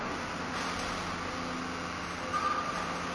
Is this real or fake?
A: real